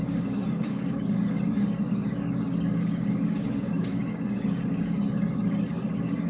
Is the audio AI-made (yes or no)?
yes